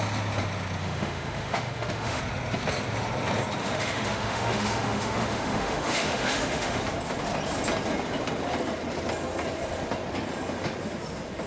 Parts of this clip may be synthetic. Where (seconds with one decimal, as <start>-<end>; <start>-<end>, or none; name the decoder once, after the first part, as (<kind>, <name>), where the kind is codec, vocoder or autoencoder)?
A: 0.8-2.2 (autoencoder, DAC-VAE); 3.6-6.8